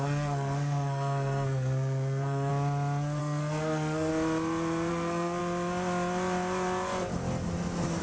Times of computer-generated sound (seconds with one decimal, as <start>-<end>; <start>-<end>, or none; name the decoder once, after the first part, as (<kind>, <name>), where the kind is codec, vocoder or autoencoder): 0.0-2.5 (codec, SNAC); 3.2-4.1; 4.9-5.4